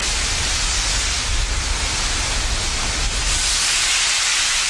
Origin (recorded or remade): recorded